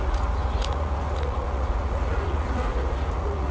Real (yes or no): no